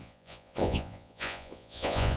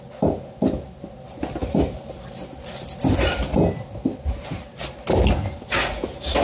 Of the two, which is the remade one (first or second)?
first